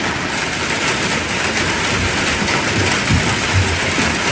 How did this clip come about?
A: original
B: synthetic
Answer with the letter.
A